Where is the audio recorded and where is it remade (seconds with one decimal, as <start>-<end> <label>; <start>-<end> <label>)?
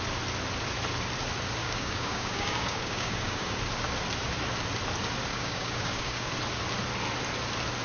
0.0-1.6 recorded; 1.6-3.6 remade; 3.6-5.3 recorded; 5.3-6.3 remade; 6.3-7.8 recorded